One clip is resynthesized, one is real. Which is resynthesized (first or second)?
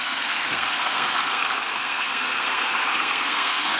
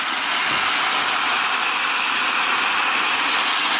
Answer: first